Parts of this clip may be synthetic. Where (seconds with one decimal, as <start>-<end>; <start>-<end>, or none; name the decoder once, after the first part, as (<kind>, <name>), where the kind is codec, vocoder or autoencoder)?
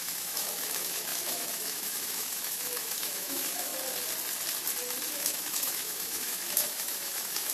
0.0-3.7 (autoencoder, DAC-VAE); 5.1-7.5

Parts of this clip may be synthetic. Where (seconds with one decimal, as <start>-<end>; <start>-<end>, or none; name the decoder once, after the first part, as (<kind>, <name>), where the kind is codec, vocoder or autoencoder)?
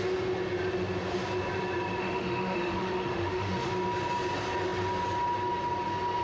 2.0-3.7 (autoencoder, DAC-VAE)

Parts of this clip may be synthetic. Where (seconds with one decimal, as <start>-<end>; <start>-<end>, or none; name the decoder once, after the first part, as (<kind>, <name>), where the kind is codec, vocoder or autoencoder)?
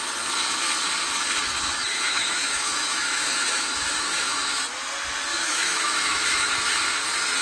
1.9-4.6 (autoencoder, DAC-VAE); 5.3-6.5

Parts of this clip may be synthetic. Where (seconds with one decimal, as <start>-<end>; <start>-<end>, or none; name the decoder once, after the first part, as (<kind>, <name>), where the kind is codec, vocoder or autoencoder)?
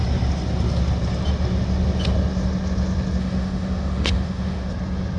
3.2-4.7 (autoencoder, DAC-VAE)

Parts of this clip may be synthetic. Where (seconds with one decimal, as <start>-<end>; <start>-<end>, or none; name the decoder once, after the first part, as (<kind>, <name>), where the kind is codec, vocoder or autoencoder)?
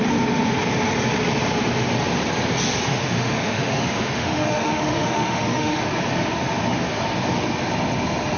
2.9-5.8 (autoencoder, DAC-VAE)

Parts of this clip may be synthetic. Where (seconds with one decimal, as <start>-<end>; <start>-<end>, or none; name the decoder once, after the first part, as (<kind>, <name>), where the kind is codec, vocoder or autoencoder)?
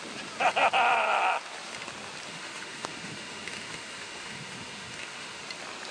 2.3-5.4 (autoencoder, DAC-VAE)